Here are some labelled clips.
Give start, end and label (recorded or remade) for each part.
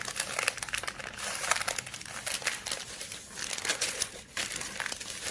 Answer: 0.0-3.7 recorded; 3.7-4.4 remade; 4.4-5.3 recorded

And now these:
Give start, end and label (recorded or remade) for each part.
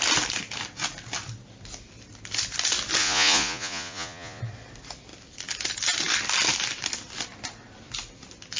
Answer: 0.0-3.0 recorded; 3.0-4.4 remade; 4.4-8.6 recorded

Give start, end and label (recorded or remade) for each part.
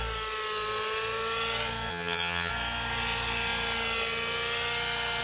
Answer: 0.0-1.9 recorded; 1.9-2.5 remade; 2.5-5.2 recorded